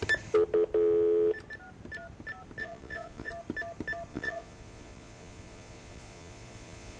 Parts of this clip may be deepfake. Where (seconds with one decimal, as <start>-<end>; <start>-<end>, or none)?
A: 2.6-3.3; 4.1-7.0